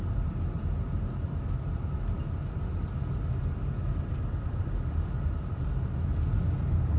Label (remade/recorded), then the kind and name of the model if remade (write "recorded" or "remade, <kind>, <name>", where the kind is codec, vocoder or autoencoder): recorded